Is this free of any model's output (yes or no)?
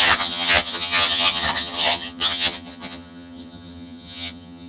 no